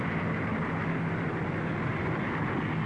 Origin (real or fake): real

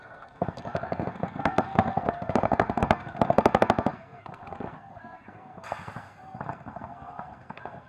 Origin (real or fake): fake